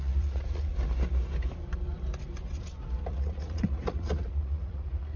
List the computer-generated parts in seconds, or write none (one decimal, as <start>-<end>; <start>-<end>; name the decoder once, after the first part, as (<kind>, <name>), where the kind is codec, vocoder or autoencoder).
0.0-0.7 (vocoder, Vocos); 3.1-5.2